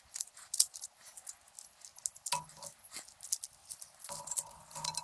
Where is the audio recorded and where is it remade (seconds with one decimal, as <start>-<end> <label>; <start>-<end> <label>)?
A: 0.0-5.0 recorded